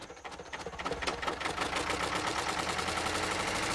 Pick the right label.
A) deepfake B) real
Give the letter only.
B